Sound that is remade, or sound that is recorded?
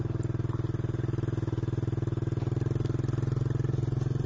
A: recorded